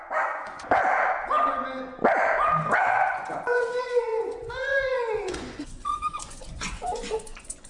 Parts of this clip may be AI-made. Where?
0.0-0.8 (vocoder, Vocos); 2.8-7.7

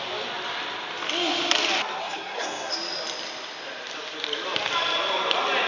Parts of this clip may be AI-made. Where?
2.0-2.7 (codec, SNAC)